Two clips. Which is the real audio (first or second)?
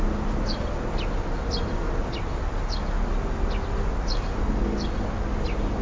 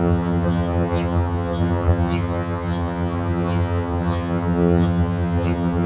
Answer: first